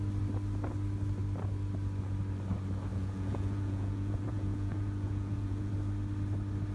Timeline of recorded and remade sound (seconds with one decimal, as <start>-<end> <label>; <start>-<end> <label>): 0.0-2.9 recorded; 2.9-5.7 remade; 5.7-6.7 recorded

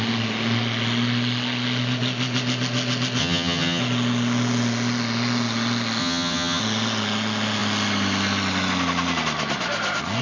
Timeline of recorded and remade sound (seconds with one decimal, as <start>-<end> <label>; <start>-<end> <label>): 0.0-3.2 recorded; 3.2-3.8 remade; 3.8-6.0 recorded; 6.0-6.6 remade; 6.6-10.2 recorded

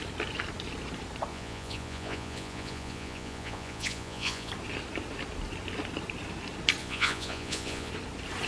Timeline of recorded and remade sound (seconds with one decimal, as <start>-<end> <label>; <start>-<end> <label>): 0.0-1.3 recorded; 1.3-4.5 remade; 4.5-6.8 recorded; 6.8-7.9 remade; 7.9-8.5 recorded

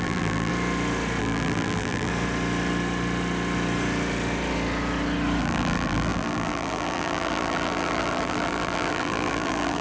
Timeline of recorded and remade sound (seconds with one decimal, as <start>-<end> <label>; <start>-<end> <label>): 0.0-0.5 remade; 0.5-1.2 recorded; 1.2-2.1 remade; 2.1-5.4 recorded; 5.4-9.8 remade

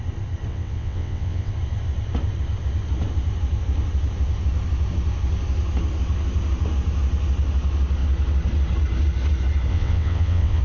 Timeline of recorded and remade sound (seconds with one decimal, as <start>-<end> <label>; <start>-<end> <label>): 0.0-0.5 recorded; 0.5-1.5 remade; 1.5-9.7 recorded; 9.7-10.6 remade

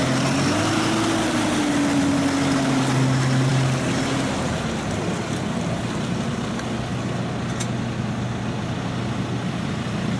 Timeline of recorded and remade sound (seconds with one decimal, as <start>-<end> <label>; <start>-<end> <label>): 0.0-10.2 recorded

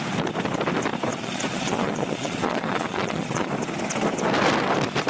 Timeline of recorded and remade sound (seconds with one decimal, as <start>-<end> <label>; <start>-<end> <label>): 0.0-1.1 recorded; 1.1-3.5 remade; 3.5-5.1 recorded